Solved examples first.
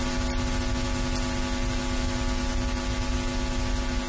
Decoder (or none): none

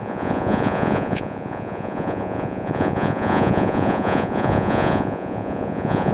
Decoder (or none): vocoder, Vocos